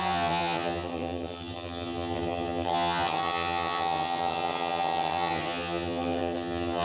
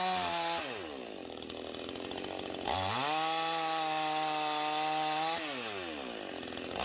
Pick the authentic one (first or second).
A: second